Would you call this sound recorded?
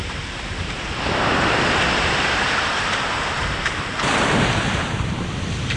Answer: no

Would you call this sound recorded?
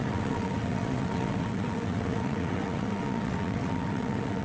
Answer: no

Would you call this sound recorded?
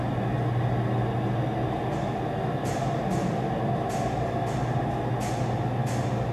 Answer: yes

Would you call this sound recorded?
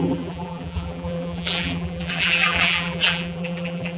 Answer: no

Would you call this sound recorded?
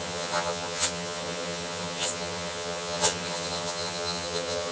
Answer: no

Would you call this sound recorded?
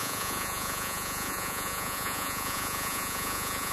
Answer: no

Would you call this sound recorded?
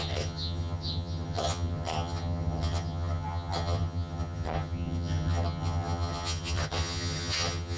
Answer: no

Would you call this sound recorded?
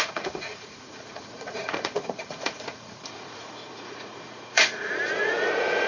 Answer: no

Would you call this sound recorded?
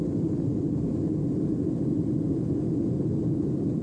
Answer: yes